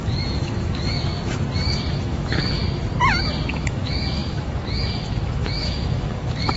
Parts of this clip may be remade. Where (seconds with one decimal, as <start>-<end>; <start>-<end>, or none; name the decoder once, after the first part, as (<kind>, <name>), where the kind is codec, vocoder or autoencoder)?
0.0-1.1 (autoencoder, DAC-VAE); 1.9-2.6; 3.5-6.6